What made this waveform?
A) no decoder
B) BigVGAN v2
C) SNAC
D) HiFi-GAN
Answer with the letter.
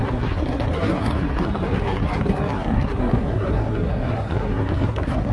C